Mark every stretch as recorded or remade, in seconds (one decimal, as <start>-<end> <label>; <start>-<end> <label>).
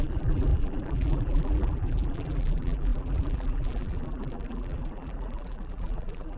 0.0-6.4 remade